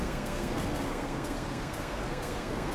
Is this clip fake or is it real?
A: fake